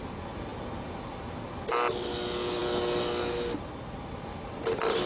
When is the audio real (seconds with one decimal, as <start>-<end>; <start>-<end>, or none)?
0.0-5.1